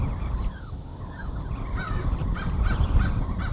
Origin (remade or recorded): recorded